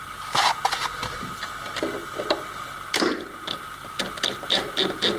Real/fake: real